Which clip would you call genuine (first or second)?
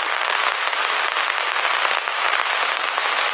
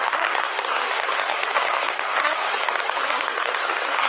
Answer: first